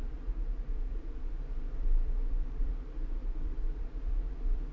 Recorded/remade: remade